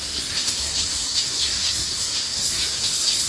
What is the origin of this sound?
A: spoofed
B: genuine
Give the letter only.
A